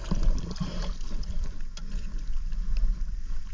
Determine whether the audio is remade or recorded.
recorded